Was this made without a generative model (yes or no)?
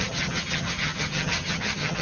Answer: no